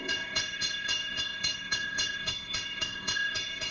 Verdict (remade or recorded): remade